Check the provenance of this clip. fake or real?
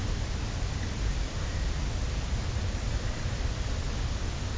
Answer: real